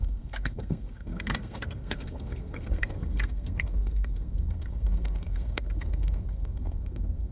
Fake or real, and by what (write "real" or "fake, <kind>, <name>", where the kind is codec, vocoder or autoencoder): fake, codec, SNAC